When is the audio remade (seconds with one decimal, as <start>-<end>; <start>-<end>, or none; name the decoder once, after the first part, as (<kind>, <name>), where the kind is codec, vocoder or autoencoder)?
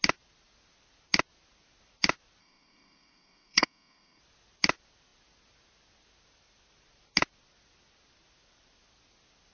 2.4-4.2 (codec, SNAC)